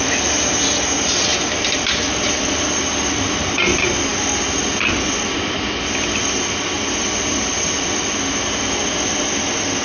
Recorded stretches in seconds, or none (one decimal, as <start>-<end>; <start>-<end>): 0.0-9.8